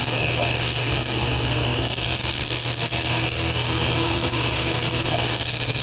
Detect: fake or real fake